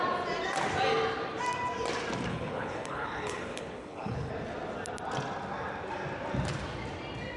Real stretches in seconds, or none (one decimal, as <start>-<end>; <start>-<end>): 0.0-2.3; 4.3-7.4